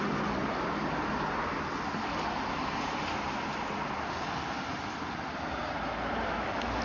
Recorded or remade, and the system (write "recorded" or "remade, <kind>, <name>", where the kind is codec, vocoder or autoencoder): recorded